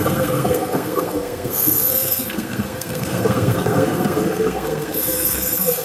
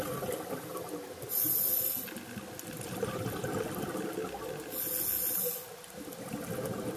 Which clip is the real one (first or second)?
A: second